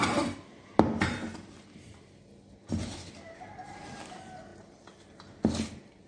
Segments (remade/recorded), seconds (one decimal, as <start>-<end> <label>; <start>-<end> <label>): 0.0-6.1 recorded